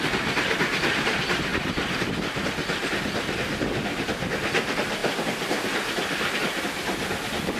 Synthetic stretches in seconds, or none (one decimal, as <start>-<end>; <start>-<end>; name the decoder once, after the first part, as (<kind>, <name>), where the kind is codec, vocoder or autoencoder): 1.5-2.1 (vocoder, BigVGAN v2); 5.0-6.6

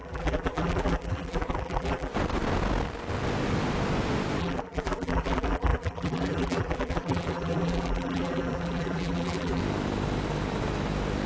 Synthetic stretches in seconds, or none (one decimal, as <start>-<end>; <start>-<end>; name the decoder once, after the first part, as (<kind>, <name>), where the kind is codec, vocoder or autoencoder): 0.0-2.1 (vocoder, BigVGAN v2); 4.4-9.6

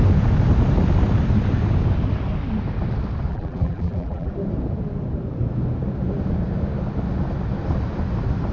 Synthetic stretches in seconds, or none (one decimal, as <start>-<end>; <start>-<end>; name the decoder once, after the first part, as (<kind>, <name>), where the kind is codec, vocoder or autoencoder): 3.3-4.3 (vocoder, BigVGAN v2)

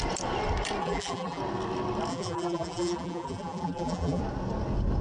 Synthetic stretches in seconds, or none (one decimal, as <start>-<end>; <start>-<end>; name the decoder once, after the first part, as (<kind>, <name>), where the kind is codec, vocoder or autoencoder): 0.8-1.4 (vocoder, BigVGAN v2); 2.1-4.2